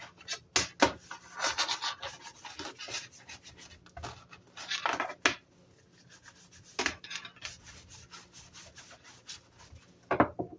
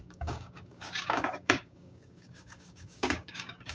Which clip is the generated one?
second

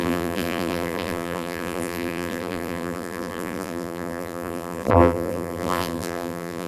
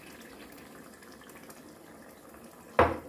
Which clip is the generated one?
first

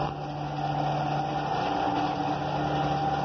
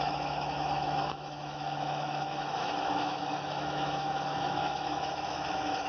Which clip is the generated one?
second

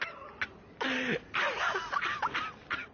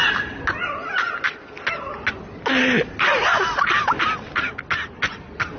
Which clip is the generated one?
first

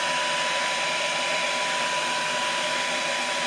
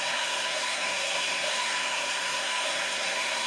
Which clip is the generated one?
second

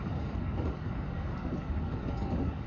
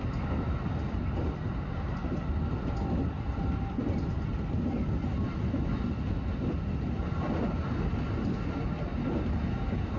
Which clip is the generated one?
first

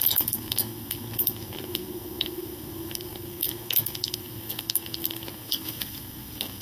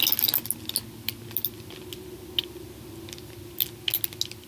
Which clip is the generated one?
first